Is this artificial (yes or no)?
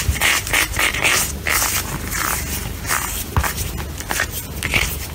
no